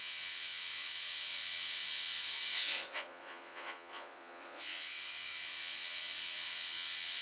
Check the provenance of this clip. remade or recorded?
remade